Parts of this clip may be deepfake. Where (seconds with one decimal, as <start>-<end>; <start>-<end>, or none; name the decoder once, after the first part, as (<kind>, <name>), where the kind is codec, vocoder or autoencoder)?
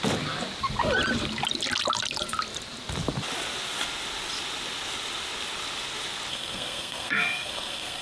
6.3-8.0 (codec, SNAC)